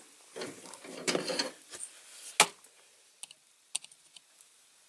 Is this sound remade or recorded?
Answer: recorded